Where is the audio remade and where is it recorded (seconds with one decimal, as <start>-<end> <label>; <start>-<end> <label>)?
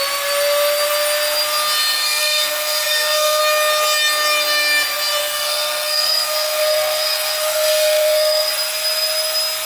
0.0-1.9 recorded; 1.9-3.4 remade; 3.4-5.2 recorded; 5.2-8.5 remade; 8.5-9.7 recorded